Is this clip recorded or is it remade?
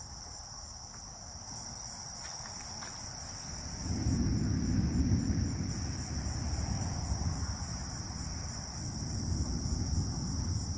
recorded